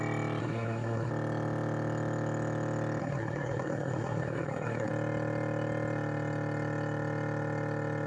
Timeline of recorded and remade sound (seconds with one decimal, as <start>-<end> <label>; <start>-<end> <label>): 0.0-0.4 recorded; 0.4-1.1 remade; 1.1-3.0 recorded; 3.0-4.9 remade; 4.9-8.1 recorded